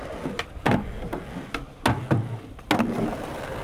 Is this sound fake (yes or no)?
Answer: no